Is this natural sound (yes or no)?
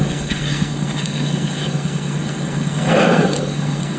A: no